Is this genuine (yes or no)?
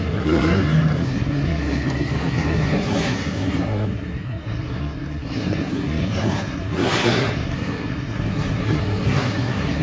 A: no